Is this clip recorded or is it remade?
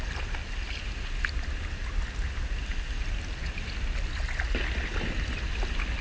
recorded